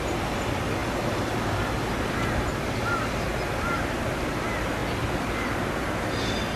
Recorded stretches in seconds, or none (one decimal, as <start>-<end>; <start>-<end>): 0.0-6.6